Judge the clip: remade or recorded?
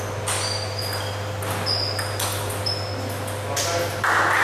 recorded